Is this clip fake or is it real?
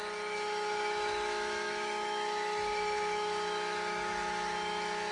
fake